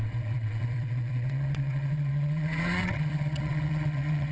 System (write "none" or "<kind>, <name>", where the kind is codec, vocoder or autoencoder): vocoder, WaveNeXt